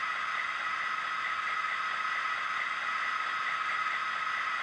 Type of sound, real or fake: real